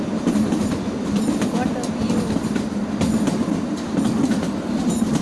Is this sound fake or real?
real